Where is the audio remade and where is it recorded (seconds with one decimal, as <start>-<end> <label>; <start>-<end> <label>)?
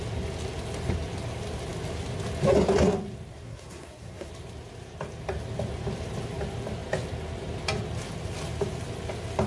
0.0-3.3 recorded; 3.3-4.3 remade; 4.3-9.5 recorded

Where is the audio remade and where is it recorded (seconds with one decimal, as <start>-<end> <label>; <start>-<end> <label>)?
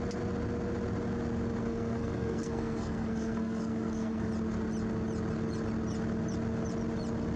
0.0-1.6 recorded; 1.6-4.3 remade; 4.3-7.4 recorded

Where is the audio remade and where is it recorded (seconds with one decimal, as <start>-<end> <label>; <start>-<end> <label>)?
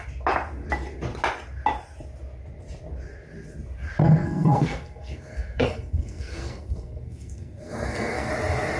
0.0-4.0 recorded; 4.0-8.3 remade; 8.3-8.8 recorded